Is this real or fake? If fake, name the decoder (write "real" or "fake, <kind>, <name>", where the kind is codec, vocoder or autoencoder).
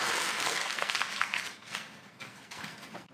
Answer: fake, codec, SNAC